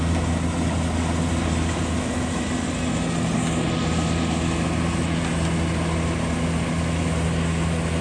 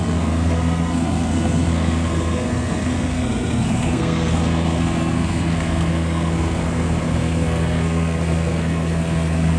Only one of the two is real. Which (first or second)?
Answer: first